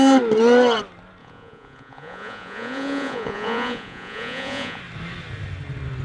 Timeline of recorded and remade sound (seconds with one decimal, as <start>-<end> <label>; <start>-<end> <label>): 0.0-1.2 recorded; 1.2-4.8 remade; 4.8-6.0 recorded